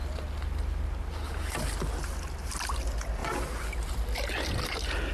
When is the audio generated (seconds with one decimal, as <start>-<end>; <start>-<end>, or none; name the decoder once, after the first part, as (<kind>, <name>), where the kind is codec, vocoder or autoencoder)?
none